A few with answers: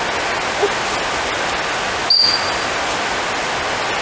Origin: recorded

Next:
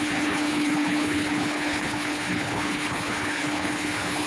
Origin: remade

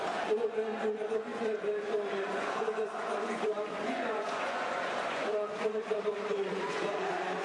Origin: remade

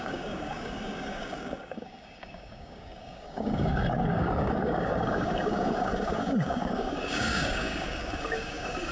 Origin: remade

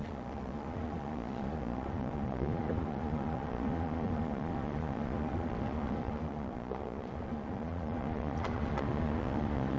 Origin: remade